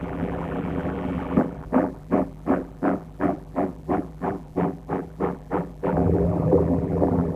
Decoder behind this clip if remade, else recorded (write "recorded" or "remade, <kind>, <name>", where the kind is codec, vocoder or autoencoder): remade, vocoder, BigVGAN v2